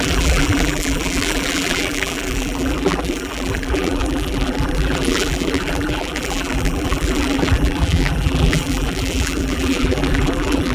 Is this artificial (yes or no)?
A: yes